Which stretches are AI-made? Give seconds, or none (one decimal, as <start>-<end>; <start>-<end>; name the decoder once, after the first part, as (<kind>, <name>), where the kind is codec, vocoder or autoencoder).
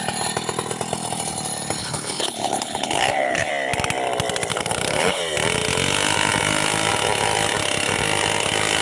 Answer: 1.8-3.5 (codec, HILCodec); 4.5-5.2